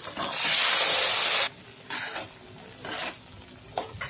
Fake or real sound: real